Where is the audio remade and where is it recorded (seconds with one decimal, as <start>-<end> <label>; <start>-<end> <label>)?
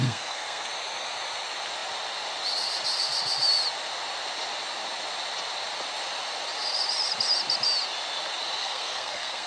0.0-0.7 remade; 0.7-8.6 recorded; 8.6-9.5 remade